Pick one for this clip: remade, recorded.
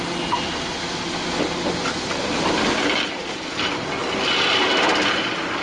recorded